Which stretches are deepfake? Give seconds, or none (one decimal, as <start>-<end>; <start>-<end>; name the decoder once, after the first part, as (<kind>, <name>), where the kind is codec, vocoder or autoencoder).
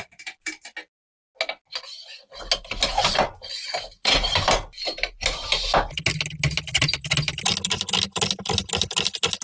none